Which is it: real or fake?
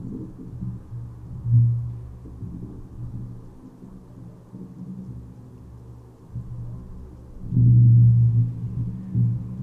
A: real